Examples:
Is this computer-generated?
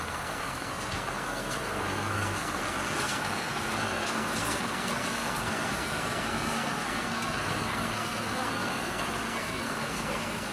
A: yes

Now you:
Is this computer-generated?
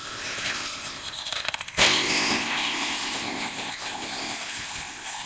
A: yes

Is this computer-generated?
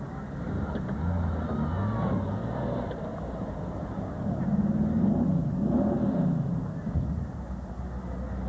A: no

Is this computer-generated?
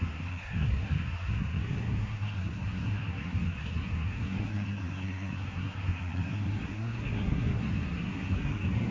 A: yes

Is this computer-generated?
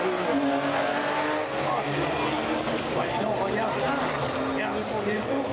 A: no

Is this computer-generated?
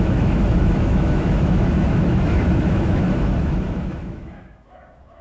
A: yes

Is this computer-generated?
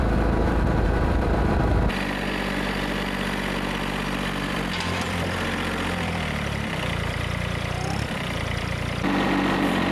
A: yes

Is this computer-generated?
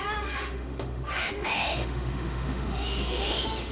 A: yes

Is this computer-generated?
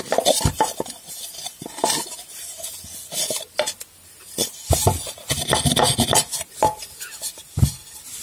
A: no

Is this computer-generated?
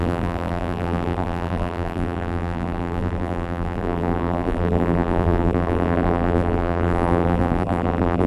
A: yes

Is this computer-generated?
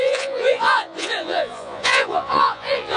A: yes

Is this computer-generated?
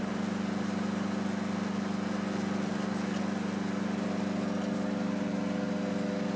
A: no